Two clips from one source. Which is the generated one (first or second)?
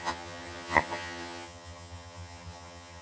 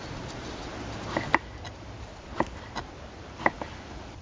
first